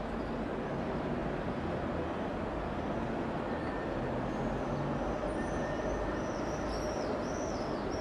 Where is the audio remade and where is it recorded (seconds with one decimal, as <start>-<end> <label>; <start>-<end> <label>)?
0.0-8.0 recorded